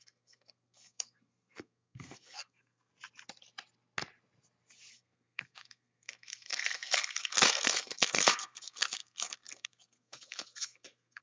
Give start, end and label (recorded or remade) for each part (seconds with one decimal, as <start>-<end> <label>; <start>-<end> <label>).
0.0-2.9 remade; 2.9-4.9 recorded; 4.9-11.2 remade